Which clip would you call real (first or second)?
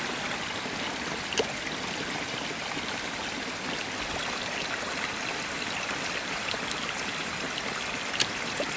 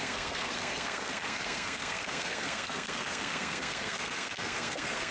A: first